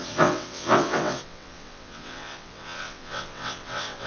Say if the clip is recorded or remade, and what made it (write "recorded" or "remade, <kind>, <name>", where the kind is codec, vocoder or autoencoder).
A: remade, vocoder, WaveNeXt